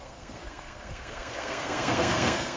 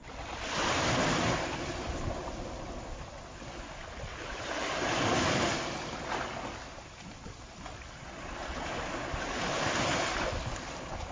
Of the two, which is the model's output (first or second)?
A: first